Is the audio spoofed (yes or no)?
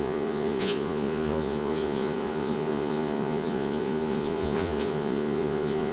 yes